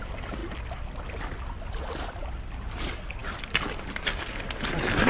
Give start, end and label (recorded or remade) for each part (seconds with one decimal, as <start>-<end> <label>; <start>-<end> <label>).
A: 0.0-5.1 recorded